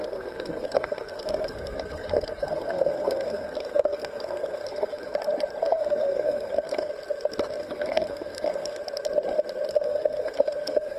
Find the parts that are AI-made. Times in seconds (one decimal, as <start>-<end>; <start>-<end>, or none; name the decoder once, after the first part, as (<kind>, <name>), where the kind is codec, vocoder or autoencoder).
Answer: 0.0-5.1 (codec, SNAC); 5.6-6.9; 7.6-8.8; 9.7-11.0